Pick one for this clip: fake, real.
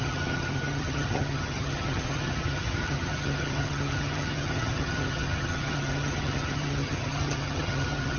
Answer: fake